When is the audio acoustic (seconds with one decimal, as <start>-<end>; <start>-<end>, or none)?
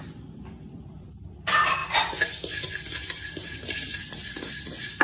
0.0-5.0